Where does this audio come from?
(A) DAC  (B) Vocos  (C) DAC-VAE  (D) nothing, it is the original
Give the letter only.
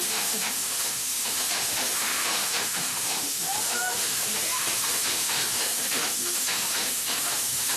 C